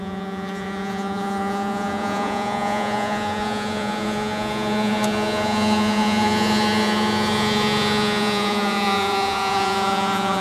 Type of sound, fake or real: fake